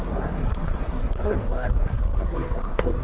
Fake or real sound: fake